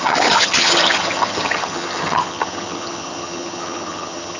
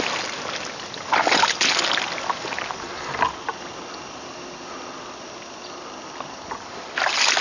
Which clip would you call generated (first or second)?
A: first